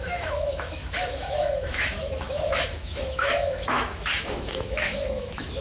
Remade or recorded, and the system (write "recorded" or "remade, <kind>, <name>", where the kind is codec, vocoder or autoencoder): remade, autoencoder, DAC-VAE